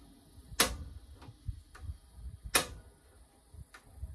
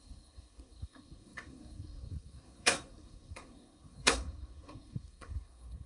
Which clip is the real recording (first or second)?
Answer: first